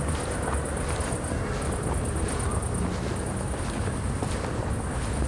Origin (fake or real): real